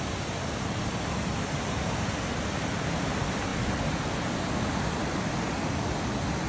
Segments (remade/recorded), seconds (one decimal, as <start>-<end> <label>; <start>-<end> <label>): 0.0-6.5 recorded